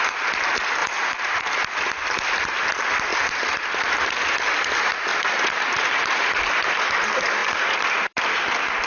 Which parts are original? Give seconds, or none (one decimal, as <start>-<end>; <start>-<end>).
0.0-0.8; 1.6-3.1; 4.4-5.1; 6.5-8.9